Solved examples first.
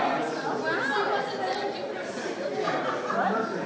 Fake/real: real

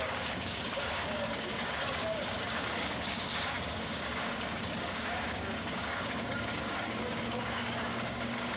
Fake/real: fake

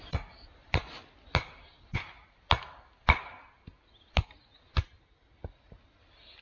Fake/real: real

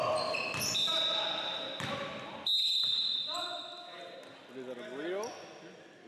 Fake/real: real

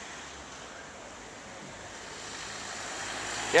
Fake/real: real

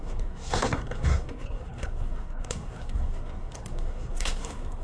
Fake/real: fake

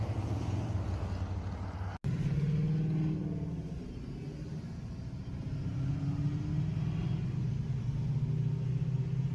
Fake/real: real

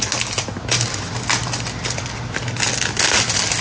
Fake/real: real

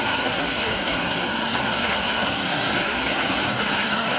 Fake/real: fake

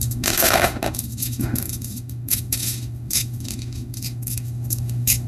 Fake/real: fake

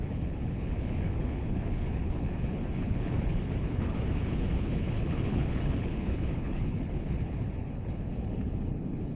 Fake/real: fake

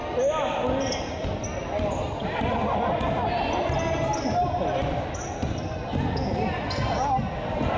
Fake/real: real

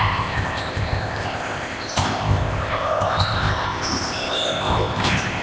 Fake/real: fake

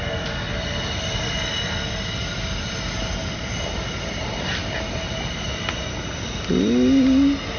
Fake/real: real